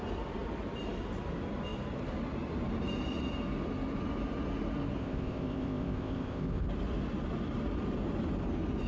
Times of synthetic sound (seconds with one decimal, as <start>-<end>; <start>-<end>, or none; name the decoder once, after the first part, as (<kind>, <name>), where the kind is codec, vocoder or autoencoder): 5.0-6.7 (codec, ZipCodec)